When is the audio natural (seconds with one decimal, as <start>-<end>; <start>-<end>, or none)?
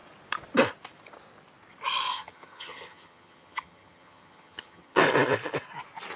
0.0-2.1; 5.0-6.2